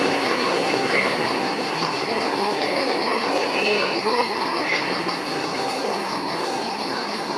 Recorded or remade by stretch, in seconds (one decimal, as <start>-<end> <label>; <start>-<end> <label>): 0.0-7.4 remade